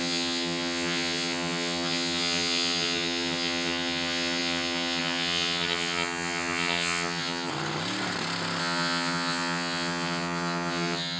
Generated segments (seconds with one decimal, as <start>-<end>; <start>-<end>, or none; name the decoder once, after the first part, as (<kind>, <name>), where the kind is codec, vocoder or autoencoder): 0.0-7.5 (vocoder, HiFi-GAN); 8.6-11.2